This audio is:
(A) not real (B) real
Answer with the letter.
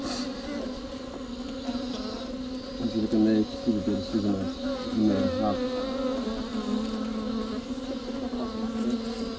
B